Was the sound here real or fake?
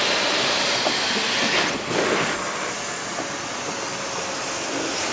real